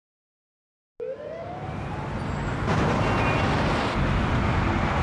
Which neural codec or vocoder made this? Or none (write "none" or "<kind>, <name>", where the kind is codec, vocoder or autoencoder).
none